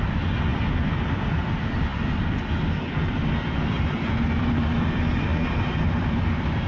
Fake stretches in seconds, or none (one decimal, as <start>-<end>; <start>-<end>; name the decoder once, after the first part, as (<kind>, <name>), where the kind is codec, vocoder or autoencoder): 0.0-5.3 (vocoder, BigVGAN v2); 6.0-6.7